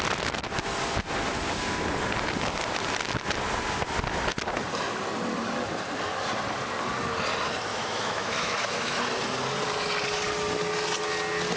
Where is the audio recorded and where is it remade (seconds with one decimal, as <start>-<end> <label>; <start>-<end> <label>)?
0.0-7.7 recorded; 7.7-9.0 remade; 9.0-11.6 recorded